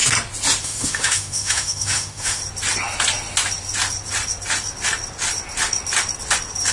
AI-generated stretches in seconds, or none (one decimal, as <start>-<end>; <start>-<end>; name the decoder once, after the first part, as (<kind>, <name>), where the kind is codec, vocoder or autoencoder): 0.6-2.4 (autoencoder, DAC-VAE)